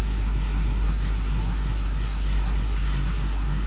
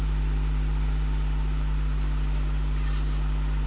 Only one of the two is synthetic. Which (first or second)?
first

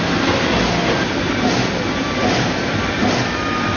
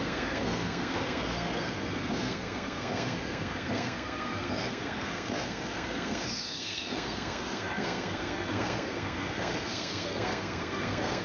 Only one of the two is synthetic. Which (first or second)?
second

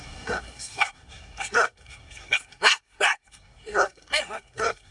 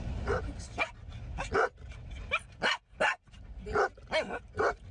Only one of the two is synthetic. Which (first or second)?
first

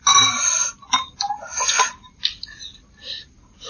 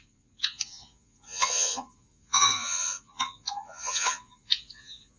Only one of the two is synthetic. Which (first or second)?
second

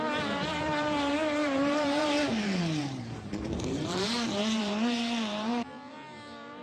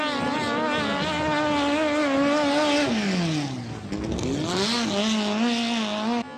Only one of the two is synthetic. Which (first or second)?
first